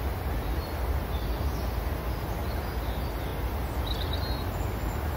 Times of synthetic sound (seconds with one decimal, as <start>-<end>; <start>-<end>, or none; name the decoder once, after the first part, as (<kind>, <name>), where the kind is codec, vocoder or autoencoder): none